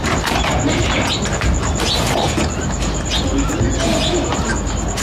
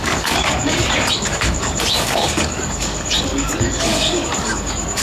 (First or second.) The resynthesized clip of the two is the second